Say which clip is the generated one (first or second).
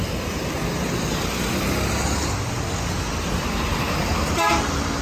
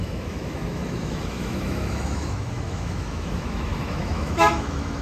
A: second